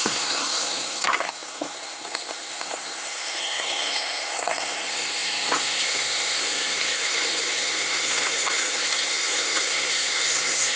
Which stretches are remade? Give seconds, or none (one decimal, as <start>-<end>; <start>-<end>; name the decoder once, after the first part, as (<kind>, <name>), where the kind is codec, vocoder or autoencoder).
0.0-10.8 (codec, SNAC)